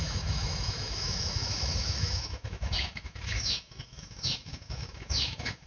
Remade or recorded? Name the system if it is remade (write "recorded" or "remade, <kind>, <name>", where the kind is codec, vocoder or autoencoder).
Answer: remade, autoencoder, DAC-VAE